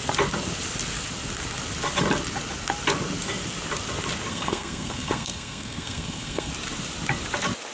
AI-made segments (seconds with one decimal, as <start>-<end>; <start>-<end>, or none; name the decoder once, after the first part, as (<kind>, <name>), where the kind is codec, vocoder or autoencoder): 4.3-6.5 (codec, SNAC)